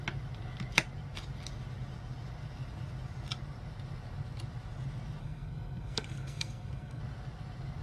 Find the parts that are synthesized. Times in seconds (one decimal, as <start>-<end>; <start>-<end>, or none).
5.2-7.0